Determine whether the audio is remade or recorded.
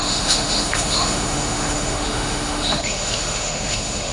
remade